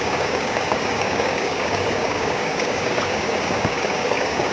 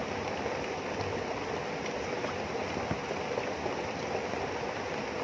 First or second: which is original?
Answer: second